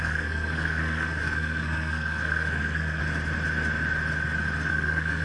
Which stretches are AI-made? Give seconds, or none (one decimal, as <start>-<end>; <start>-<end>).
0.0-3.0; 4.7-5.2